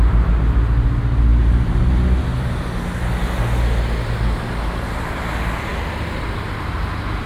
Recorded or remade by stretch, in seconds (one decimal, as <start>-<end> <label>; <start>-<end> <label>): 0.0-1.3 recorded; 1.3-1.9 remade; 1.9-7.3 recorded